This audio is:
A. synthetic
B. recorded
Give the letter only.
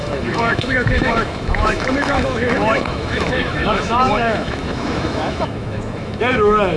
A